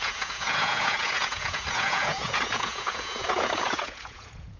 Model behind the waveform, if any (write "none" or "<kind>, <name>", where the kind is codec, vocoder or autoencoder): vocoder, Vocos